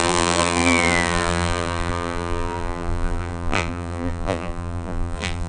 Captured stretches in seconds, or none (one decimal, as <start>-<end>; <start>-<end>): none